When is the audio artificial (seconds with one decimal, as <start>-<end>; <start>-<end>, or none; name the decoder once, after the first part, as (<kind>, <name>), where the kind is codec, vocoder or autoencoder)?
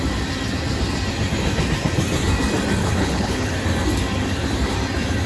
2.8-3.5 (codec, HILCodec)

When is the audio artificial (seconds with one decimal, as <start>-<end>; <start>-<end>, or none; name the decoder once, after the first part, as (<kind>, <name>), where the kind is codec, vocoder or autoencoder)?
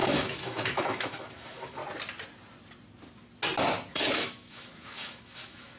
0.0-1.8 (autoencoder, DAC-VAE); 3.9-5.8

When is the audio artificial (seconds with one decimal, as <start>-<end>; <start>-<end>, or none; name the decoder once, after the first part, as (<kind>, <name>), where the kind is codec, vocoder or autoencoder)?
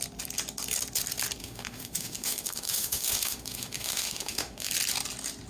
1.4-4.7 (autoencoder, DAC-VAE)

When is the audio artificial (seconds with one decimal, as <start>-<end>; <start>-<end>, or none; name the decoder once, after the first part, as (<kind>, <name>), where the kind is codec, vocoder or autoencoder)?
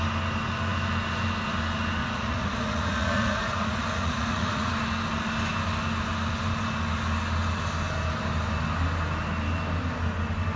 2.0-4.7 (vocoder, Vocos)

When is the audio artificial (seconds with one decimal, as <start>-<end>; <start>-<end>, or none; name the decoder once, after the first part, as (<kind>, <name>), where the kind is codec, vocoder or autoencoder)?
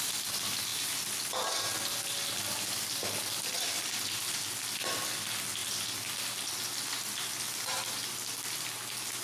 none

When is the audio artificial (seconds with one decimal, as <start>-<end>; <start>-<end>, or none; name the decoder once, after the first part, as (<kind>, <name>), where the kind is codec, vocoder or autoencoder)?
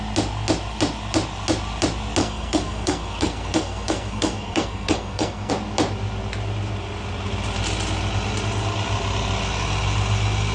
2.2-5.5 (codec, SNAC)